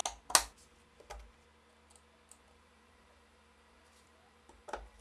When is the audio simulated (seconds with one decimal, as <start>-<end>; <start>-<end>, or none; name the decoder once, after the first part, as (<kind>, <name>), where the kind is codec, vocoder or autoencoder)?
2.4-5.0 (vocoder, BigVGAN v2)